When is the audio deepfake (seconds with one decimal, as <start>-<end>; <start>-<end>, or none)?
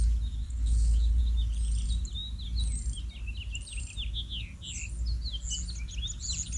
0.4-1.2